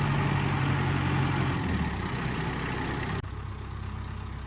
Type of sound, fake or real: real